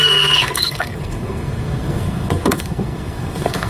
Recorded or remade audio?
remade